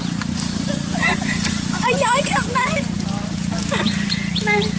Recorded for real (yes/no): yes